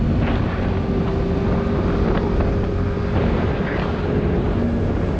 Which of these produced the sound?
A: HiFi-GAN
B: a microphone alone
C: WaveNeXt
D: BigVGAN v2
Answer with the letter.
B